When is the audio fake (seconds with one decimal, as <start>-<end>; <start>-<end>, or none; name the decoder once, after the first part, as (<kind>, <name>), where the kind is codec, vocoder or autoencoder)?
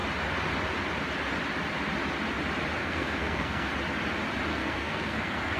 2.8-3.7 (codec, SNAC); 4.5-5.6